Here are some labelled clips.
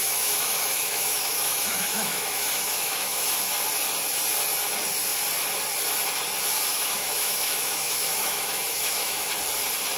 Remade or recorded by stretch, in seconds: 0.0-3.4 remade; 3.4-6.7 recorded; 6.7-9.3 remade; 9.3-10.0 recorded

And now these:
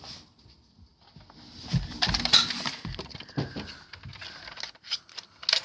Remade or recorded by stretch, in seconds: 0.0-5.6 recorded

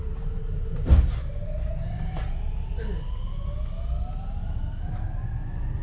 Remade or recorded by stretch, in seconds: 0.0-0.9 remade; 0.9-5.8 recorded

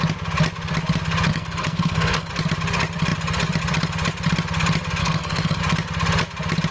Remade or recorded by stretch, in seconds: 0.0-1.3 recorded; 1.3-2.3 remade; 2.3-5.0 recorded; 5.0-5.6 remade; 5.6-6.7 recorded

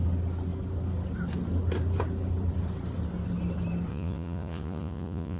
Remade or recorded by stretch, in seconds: 0.0-3.9 recorded; 3.9-5.4 remade

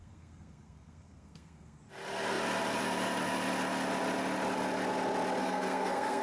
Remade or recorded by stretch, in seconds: 0.0-1.8 remade; 1.8-5.4 recorded; 5.4-6.2 remade